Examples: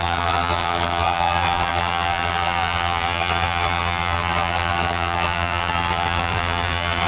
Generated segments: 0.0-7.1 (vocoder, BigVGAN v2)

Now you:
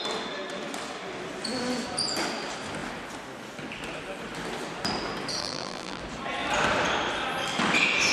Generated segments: 5.4-6.0 (vocoder, BigVGAN v2)

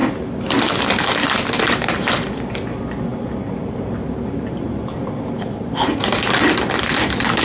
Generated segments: none

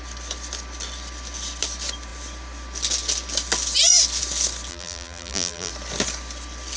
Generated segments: 4.7-5.7 (vocoder, BigVGAN v2)

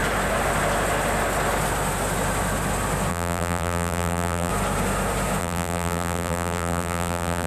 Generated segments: 3.1-4.5 (vocoder, BigVGAN v2); 5.4-7.5